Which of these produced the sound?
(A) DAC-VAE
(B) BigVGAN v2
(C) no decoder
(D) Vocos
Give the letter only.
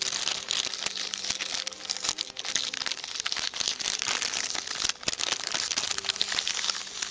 C